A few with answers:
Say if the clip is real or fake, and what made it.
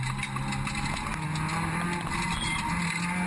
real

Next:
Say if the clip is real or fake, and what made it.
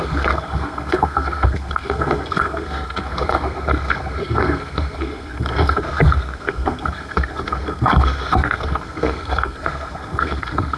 fake, codec, SNAC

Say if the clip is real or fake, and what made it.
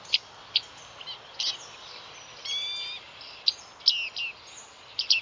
real